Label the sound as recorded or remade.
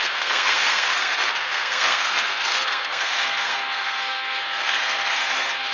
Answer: remade